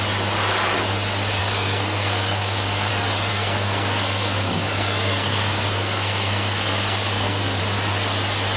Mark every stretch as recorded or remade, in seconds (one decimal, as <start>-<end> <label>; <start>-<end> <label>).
0.0-1.4 recorded; 1.4-2.9 remade; 2.9-3.3 recorded; 3.3-7.6 remade; 7.6-8.6 recorded